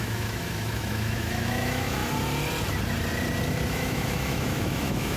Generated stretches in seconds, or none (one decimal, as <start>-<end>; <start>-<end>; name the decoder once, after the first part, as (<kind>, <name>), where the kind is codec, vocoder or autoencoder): 0.0-2.0 (autoencoder, DAC-VAE); 3.7-5.2